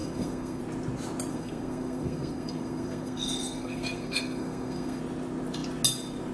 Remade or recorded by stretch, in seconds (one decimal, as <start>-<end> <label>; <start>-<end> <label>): 0.0-0.6 remade; 0.6-1.3 recorded; 1.3-5.0 remade; 5.0-6.3 recorded